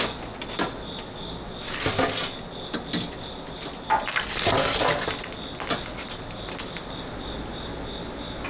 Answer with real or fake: real